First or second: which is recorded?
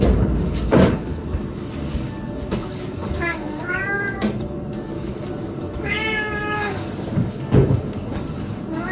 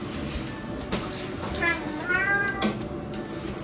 second